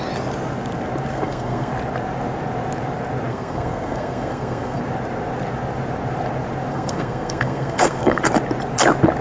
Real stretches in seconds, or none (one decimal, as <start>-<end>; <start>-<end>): 0.0-1.1; 1.7-3.3; 4.8-6.7; 8.2-9.2